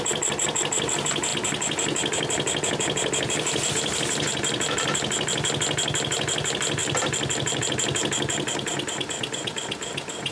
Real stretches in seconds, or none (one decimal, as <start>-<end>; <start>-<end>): 0.0-6.8; 7.6-10.3